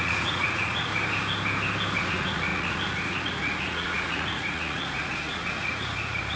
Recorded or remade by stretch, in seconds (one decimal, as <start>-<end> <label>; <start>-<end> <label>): 0.0-0.9 remade; 0.9-2.0 recorded; 2.0-6.4 remade